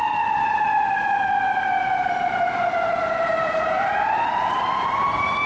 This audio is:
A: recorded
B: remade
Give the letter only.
A